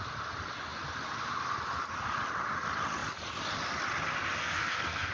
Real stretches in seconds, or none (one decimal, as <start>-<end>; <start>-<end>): 0.0-4.4